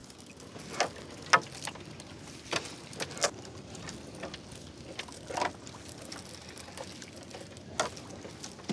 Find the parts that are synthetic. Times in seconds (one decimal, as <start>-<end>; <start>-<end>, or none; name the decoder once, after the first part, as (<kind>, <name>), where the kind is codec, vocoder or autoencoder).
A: none